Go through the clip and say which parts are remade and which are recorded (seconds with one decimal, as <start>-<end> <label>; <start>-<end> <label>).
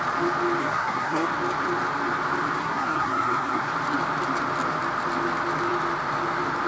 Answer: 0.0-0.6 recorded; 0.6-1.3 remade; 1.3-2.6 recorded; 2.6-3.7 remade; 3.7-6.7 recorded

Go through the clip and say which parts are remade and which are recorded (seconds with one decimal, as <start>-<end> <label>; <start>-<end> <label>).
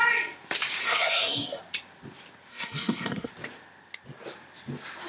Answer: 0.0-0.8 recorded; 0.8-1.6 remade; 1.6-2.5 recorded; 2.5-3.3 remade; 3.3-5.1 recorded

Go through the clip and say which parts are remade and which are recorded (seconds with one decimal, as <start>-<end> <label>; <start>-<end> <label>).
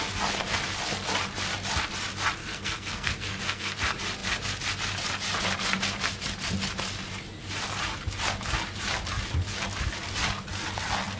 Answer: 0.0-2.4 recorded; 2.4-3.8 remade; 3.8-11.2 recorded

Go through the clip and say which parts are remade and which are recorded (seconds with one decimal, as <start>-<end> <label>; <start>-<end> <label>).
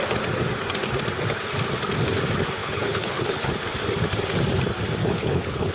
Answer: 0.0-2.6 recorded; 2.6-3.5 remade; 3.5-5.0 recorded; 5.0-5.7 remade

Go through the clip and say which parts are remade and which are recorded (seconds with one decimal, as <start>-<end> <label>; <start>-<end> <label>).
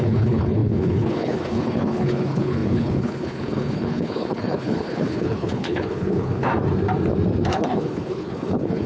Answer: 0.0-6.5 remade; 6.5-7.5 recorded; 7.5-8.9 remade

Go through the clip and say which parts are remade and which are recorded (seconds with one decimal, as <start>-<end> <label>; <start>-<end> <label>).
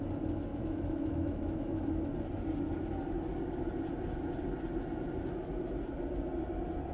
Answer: 0.0-0.5 recorded; 0.5-2.1 remade; 2.1-6.9 recorded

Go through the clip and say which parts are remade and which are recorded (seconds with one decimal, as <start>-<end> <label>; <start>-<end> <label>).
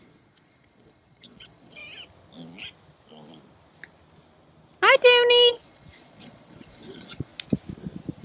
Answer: 0.0-1.8 remade; 1.8-5.5 recorded; 5.5-7.3 remade; 7.3-8.2 recorded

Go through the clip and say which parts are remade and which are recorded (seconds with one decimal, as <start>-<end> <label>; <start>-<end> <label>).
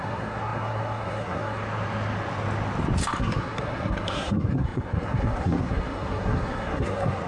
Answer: 0.0-1.6 remade; 1.6-3.2 recorded; 3.2-7.3 remade